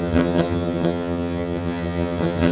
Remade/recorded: remade